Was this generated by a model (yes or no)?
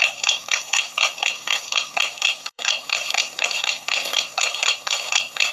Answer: yes